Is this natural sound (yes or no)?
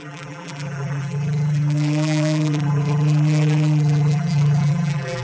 no